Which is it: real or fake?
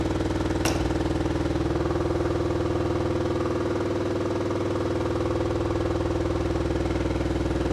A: real